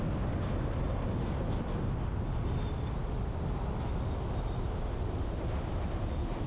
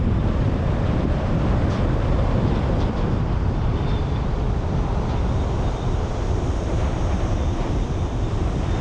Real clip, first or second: first